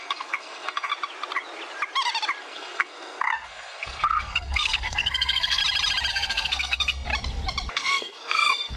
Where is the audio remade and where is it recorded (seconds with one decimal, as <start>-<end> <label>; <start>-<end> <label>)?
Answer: 0.0-0.9 remade; 0.9-2.4 recorded; 2.4-5.6 remade; 5.6-6.1 recorded; 6.1-7.1 remade; 7.1-7.7 recorded; 7.7-8.8 remade